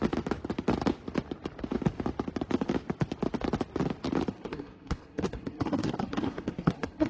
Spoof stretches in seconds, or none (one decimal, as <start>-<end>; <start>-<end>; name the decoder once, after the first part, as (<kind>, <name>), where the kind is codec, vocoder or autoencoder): 4.3-7.1 (codec, SNAC)